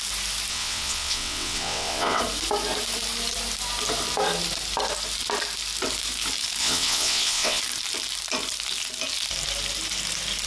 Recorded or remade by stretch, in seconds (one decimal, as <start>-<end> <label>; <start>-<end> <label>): 0.0-0.5 recorded; 0.5-2.2 remade; 2.2-6.6 recorded; 6.6-7.6 remade; 7.6-10.5 recorded